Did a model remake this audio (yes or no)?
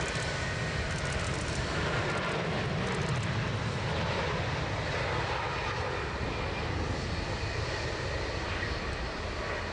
no